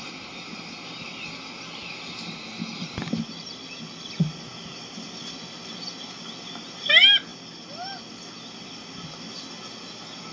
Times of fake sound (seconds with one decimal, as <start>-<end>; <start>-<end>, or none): none